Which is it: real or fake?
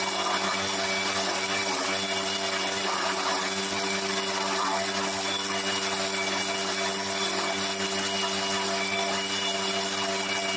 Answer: real